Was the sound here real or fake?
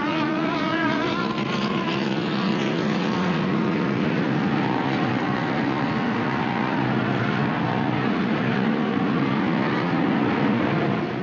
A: fake